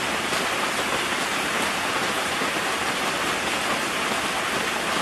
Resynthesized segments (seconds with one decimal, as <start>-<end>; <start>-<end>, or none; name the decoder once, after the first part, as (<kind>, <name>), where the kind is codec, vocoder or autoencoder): 1.1-4.1 (vocoder, BigVGAN v2)

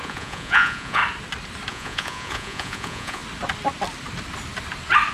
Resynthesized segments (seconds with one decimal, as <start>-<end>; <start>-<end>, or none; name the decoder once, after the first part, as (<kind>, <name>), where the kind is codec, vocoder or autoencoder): 0.0-1.0 (vocoder, Vocos); 1.7-3.2